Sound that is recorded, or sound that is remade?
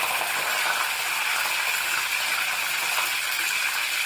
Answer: recorded